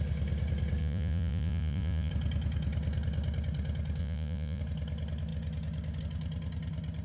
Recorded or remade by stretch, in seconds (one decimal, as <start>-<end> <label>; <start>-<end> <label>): 0.0-0.8 recorded; 0.8-2.1 remade; 2.1-4.0 recorded; 4.0-4.6 remade; 4.6-7.0 recorded